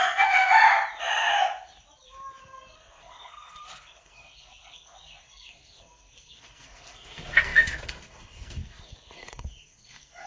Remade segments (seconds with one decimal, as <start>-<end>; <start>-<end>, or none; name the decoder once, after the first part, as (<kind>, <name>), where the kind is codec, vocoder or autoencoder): 0.0-0.5 (codec, SNAC); 2.4-10.3